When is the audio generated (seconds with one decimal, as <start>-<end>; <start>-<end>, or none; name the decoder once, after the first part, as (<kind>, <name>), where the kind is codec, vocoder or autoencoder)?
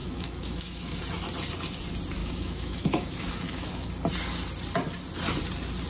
0.0-1.0 (autoencoder, DAC-VAE); 2.2-3.9